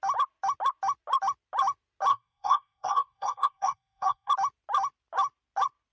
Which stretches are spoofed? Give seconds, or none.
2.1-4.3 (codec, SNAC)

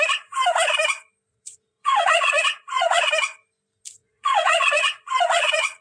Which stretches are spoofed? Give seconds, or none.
1.3-3.0 (vocoder, Vocos); 4.0-5.8